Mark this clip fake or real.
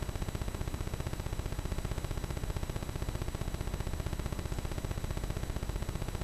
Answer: real